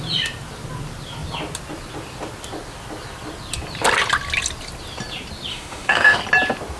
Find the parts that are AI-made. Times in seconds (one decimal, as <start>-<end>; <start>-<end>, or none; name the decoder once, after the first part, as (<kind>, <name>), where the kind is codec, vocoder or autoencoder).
5.5-6.2 (autoencoder, DAC-VAE)